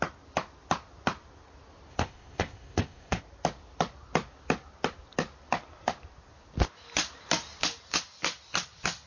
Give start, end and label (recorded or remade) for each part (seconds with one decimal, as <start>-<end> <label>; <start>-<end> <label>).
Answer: 0.0-1.9 recorded; 1.9-3.2 remade; 3.2-9.1 recorded